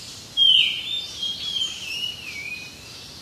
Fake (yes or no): yes